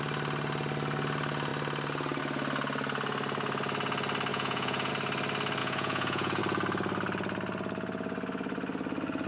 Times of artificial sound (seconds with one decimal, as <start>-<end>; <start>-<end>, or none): 4.3-4.9; 5.6-6.4